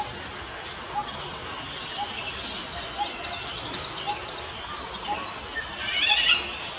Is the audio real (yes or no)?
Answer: yes